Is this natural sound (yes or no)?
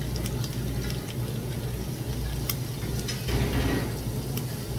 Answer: yes